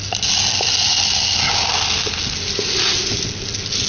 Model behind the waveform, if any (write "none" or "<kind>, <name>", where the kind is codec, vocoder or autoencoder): none